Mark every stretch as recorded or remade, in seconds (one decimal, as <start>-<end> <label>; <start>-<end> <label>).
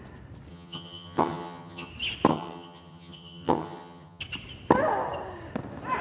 0.0-0.5 recorded; 0.5-1.9 remade; 1.9-2.3 recorded; 2.3-4.2 remade; 4.2-6.0 recorded